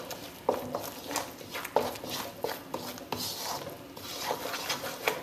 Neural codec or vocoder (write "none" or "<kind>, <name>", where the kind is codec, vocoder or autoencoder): none